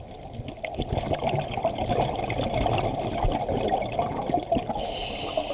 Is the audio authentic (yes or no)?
yes